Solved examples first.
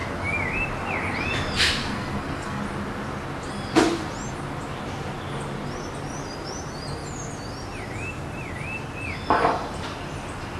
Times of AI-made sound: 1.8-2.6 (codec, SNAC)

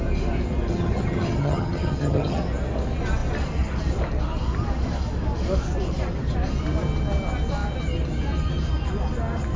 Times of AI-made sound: 0.7-2.4 (vocoder, HiFi-GAN)

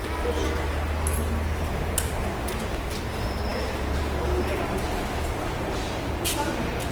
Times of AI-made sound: none

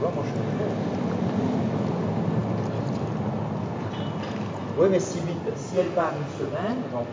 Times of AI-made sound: none

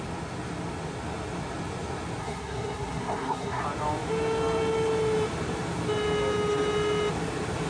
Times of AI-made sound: 2.2-3.6 (codec, SNAC)

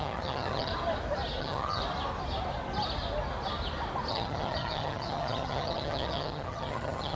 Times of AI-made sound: 0.0-0.7 (vocoder, HiFi-GAN); 1.4-1.8; 4.1-7.1